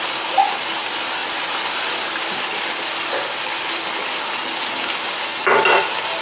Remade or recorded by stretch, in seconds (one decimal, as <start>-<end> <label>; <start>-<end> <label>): 0.0-6.2 recorded